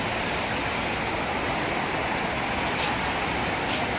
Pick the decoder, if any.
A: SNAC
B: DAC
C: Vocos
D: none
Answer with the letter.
D